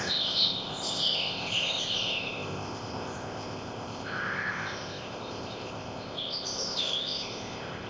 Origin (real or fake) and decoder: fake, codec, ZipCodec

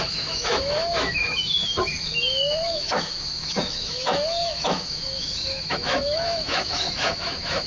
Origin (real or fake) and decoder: fake, autoencoder, DAC-VAE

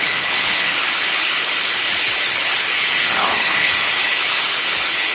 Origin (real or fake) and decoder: fake, codec, HILCodec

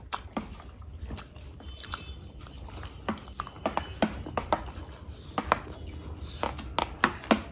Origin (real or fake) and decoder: real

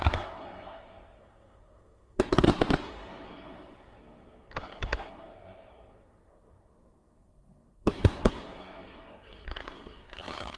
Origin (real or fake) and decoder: fake, codec, SNAC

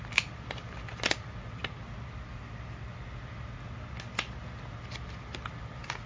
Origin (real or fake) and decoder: real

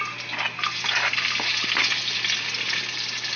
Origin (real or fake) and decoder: real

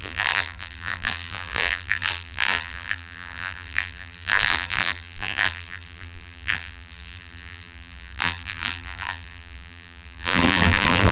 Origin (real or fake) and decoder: fake, vocoder, BigVGAN v2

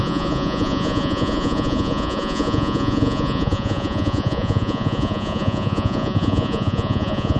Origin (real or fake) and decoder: fake, vocoder, Vocos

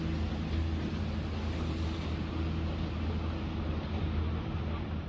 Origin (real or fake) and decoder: real